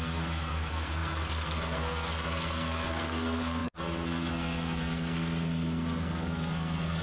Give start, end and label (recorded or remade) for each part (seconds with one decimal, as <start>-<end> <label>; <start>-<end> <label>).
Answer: 0.0-7.0 remade